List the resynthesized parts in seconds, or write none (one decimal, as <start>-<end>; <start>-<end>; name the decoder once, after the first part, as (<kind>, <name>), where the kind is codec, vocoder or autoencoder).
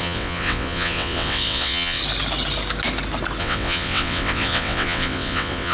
0.0-2.0 (vocoder, WaveNeXt); 3.4-5.7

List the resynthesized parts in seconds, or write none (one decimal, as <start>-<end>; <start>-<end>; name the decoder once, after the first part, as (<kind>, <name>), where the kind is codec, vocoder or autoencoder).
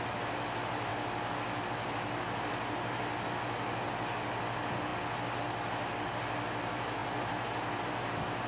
none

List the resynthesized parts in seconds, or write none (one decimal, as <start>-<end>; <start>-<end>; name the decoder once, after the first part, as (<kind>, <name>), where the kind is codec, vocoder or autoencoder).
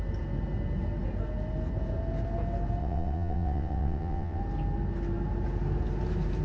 2.8-4.4 (vocoder, WaveNeXt)